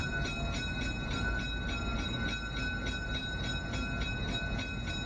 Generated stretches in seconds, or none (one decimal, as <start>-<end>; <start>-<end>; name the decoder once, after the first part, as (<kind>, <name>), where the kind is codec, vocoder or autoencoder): none